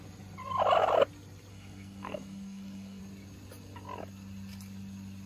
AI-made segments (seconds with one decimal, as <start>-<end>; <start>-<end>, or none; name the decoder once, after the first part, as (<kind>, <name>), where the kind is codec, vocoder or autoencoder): 1.5-3.0 (codec, SNAC)